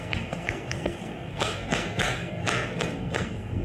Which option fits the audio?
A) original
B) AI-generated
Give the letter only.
B